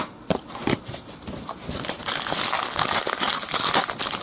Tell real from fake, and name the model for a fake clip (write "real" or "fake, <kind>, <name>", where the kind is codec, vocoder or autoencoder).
real